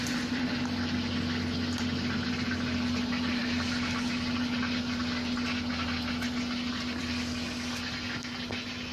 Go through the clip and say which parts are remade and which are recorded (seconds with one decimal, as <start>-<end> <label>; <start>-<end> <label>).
0.0-8.9 recorded